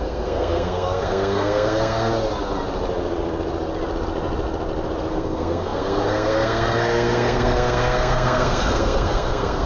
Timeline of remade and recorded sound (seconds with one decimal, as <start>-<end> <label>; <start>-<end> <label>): 0.0-2.1 remade; 2.1-5.1 recorded; 5.1-9.7 remade